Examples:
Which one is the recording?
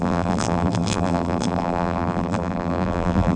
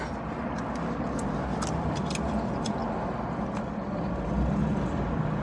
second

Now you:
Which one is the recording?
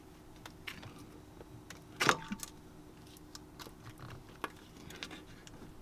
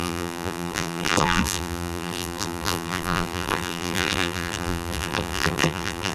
first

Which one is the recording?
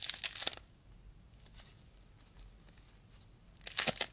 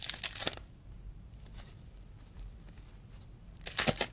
first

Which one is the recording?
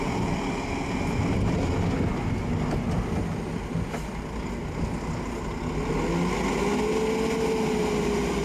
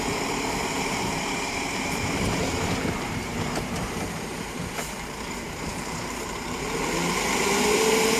first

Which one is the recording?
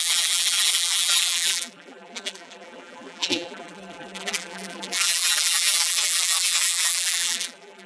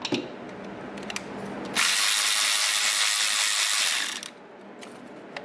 second